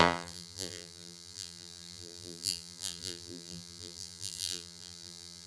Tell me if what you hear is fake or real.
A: fake